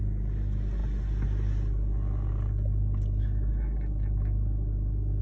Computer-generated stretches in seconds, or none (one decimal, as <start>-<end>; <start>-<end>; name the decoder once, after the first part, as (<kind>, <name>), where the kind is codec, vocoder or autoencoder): none

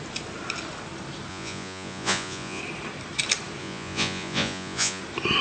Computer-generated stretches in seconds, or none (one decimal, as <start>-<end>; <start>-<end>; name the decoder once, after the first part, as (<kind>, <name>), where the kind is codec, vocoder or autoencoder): 1.3-2.6 (vocoder, Vocos); 3.6-5.0

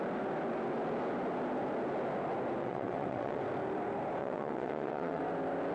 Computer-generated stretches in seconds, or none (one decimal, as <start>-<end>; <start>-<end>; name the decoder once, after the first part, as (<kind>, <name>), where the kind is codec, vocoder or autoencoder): 2.6-3.4 (vocoder, WaveNeXt); 4.2-5.2

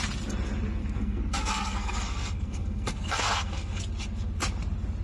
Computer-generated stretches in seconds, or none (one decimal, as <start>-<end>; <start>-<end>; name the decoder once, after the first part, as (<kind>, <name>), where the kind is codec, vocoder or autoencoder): 0.8-3.8 (codec, SNAC)

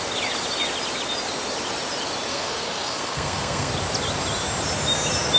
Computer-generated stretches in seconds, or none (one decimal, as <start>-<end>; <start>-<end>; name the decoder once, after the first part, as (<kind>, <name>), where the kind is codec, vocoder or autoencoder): 2.3-3.7 (codec, SNAC)

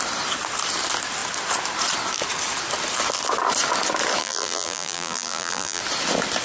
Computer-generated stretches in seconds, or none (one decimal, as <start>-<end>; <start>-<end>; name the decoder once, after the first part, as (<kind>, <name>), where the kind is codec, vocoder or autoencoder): 4.2-5.8 (vocoder, BigVGAN v2)